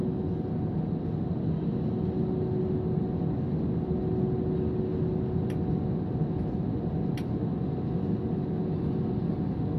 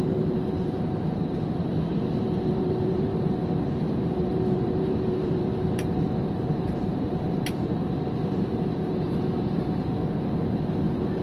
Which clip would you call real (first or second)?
first